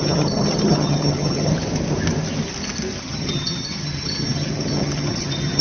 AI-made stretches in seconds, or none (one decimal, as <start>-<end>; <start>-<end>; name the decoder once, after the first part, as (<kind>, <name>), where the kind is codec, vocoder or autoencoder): 0.0-1.5 (vocoder, HiFi-GAN); 3.0-5.6